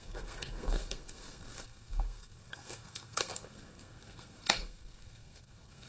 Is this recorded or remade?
remade